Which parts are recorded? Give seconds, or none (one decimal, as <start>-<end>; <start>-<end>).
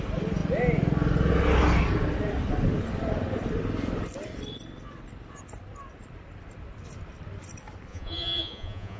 0.0-7.9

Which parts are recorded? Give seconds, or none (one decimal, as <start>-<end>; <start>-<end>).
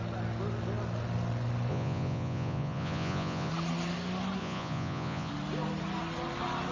0.0-1.7; 3.5-4.4; 5.3-6.7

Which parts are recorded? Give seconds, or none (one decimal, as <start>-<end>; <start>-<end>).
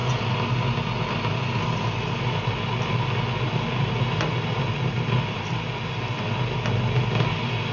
0.0-3.7; 5.4-7.7